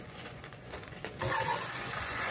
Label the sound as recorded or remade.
remade